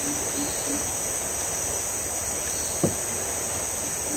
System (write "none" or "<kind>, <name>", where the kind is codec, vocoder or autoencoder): none